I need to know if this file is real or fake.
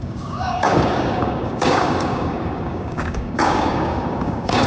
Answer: fake